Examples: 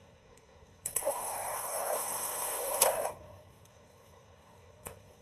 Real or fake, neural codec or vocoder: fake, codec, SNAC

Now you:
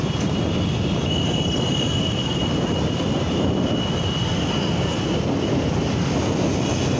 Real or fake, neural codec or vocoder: real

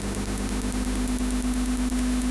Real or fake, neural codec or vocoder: fake, autoencoder, DAC-VAE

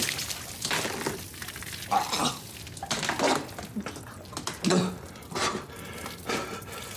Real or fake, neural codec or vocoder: real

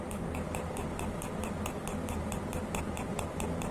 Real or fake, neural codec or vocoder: real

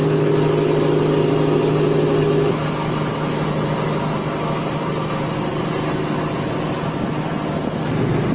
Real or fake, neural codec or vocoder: real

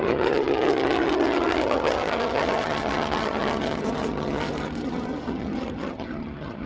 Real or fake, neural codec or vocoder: fake, vocoder, HiFi-GAN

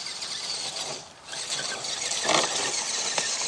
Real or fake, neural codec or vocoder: real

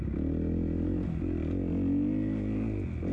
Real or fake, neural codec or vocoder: real